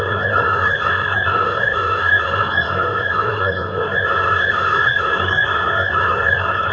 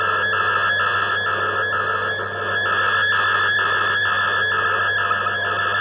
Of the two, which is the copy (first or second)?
first